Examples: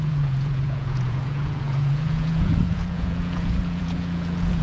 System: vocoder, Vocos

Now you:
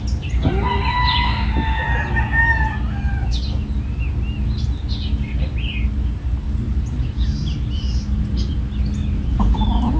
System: none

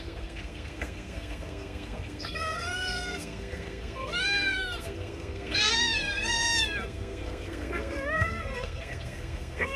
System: codec, SNAC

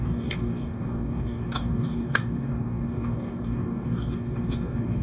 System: codec, DAC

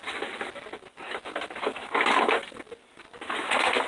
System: none